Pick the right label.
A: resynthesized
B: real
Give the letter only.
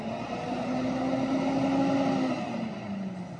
B